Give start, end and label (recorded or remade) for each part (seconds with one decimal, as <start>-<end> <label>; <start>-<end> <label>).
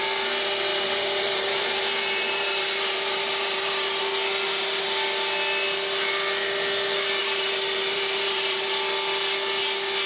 0.0-0.7 recorded; 0.7-4.0 remade; 4.0-7.2 recorded; 7.2-8.7 remade; 8.7-10.1 recorded